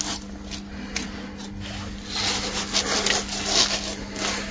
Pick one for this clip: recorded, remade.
recorded